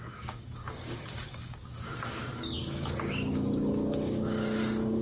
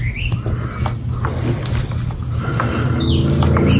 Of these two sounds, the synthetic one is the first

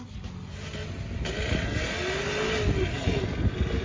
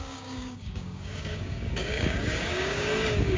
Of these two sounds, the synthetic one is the second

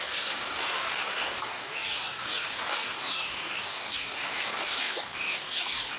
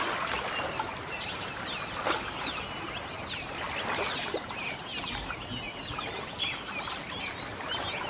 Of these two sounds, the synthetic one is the first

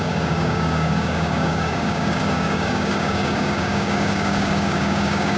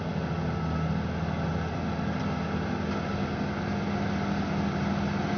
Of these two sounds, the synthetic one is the first